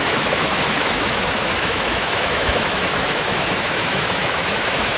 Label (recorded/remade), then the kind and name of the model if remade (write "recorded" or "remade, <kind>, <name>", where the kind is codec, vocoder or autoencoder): remade, autoencoder, DAC-VAE